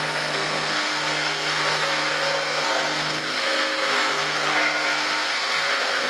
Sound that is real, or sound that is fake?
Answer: fake